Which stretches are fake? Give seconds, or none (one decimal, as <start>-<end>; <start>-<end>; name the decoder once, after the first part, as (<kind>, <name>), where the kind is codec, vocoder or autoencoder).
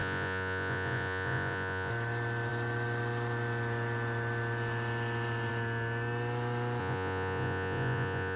0.0-1.9 (vocoder, Vocos); 6.8-8.4